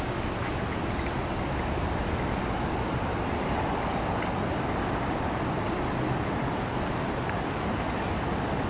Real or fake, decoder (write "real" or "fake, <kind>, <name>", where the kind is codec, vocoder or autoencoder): real